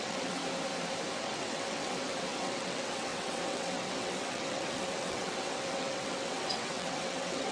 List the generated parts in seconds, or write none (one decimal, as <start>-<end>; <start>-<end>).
0.0-0.4; 1.2-7.5